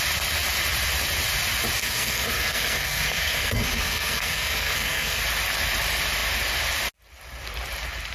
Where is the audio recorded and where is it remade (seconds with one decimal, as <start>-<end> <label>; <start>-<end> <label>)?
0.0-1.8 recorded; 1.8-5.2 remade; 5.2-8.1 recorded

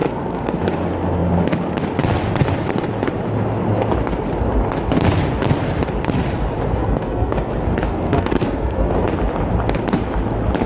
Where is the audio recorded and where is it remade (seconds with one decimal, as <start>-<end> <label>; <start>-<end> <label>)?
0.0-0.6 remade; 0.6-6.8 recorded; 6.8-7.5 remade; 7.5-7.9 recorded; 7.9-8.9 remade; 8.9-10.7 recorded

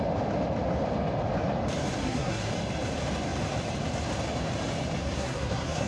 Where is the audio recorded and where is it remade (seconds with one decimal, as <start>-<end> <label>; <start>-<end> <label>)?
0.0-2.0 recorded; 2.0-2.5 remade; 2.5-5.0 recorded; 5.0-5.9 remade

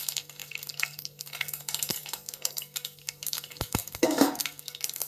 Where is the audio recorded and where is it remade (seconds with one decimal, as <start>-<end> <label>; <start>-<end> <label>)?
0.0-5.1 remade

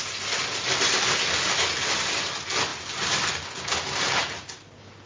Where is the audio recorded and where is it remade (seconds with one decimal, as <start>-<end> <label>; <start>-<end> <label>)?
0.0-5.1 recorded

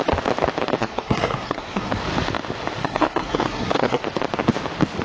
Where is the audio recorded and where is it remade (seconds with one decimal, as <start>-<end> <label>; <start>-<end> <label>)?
0.0-0.8 recorded; 0.8-2.0 remade; 2.0-2.8 recorded; 2.8-4.0 remade; 4.0-5.0 recorded

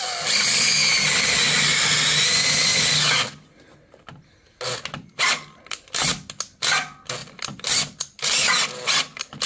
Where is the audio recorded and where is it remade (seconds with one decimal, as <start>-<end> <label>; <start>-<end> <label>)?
0.0-9.5 recorded

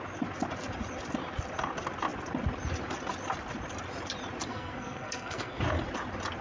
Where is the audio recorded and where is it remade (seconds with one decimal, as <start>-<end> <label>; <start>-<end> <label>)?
0.0-4.5 recorded; 4.5-5.6 remade; 5.6-6.4 recorded